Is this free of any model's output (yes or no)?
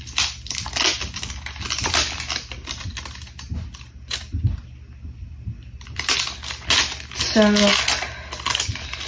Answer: yes